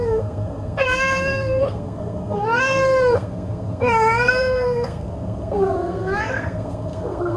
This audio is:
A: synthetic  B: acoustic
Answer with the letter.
A